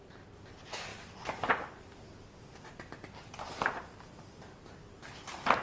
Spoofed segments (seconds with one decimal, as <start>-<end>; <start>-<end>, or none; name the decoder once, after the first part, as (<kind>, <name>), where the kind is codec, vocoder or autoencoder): none